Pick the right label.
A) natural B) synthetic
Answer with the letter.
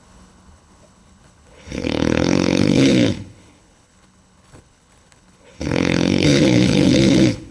B